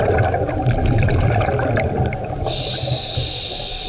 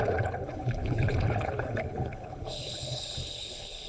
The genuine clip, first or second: first